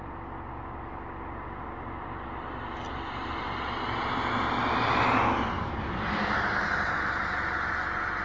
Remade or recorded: recorded